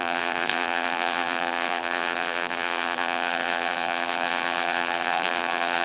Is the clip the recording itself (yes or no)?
no